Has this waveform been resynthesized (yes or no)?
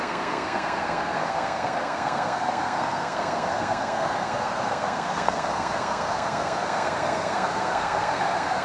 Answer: yes